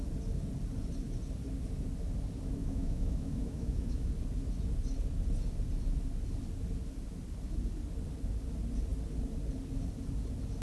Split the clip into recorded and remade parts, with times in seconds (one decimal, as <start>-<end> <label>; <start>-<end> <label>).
0.0-2.6 recorded; 2.6-4.1 remade; 4.1-10.6 recorded